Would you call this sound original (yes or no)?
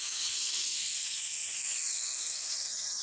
no